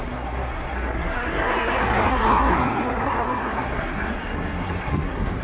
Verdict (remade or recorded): remade